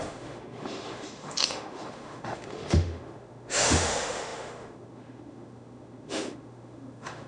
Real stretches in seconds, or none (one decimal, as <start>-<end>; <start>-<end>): none